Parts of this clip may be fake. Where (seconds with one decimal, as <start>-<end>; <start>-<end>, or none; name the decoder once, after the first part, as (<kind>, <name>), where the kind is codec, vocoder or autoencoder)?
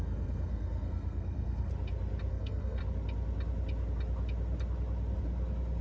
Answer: 0.0-1.7 (codec, SNAC); 2.3-2.8